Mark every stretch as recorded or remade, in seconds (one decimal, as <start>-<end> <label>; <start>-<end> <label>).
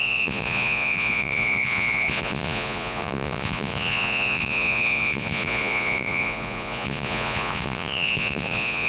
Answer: 0.0-8.9 remade